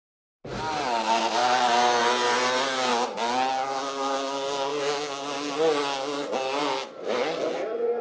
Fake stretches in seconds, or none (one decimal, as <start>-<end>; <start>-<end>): none